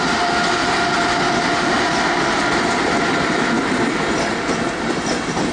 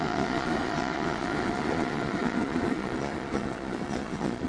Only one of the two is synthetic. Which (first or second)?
second